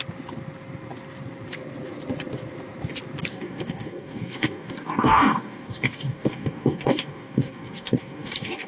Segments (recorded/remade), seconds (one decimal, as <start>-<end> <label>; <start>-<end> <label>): 0.0-3.3 recorded; 3.3-8.7 remade